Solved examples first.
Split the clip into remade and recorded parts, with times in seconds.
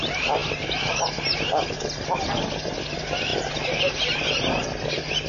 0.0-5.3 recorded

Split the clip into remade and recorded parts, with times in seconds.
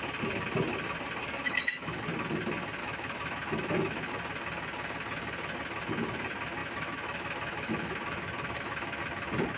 0.0-1.2 recorded; 1.2-2.0 remade; 2.0-2.8 recorded; 2.8-4.0 remade; 4.0-6.6 recorded; 6.6-9.0 remade; 9.0-9.6 recorded